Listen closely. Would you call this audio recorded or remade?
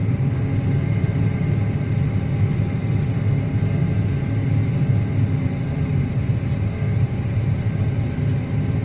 recorded